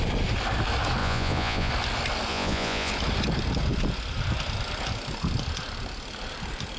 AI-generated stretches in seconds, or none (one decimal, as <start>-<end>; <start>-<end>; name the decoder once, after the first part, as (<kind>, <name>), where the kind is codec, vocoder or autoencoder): 1.0-1.7 (vocoder, Vocos); 2.3-2.9

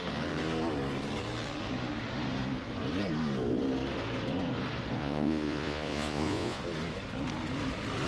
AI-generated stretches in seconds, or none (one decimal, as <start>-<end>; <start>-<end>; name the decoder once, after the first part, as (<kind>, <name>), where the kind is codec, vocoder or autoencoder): 5.0-6.6 (vocoder, Vocos)

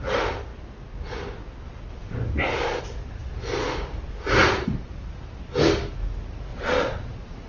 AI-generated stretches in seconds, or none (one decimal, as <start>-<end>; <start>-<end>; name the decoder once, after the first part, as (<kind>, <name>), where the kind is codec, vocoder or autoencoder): 6.5-7.5 (vocoder, Vocos)

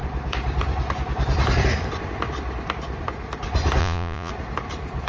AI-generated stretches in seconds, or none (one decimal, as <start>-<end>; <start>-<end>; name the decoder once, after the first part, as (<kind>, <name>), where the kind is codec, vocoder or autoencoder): 3.8-4.3 (vocoder, Vocos)